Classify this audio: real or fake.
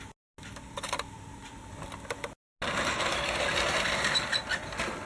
real